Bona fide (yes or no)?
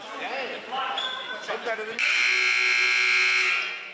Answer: yes